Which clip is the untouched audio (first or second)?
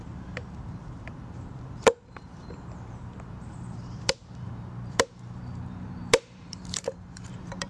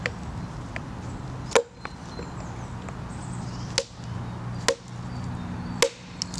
second